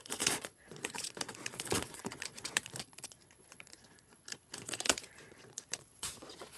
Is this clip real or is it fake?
fake